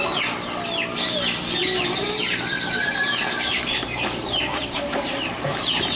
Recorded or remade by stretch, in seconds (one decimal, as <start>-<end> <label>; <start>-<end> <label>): 0.0-2.9 recorded; 2.9-6.0 remade